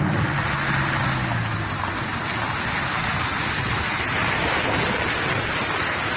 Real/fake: real